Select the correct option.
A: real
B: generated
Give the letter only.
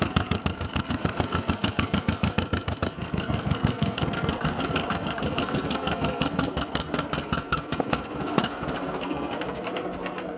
B